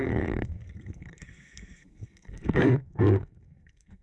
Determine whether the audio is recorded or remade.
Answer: remade